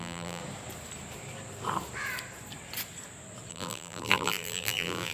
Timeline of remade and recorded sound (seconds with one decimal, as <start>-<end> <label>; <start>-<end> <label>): 0.0-0.4 remade; 0.4-3.5 recorded; 3.5-5.1 remade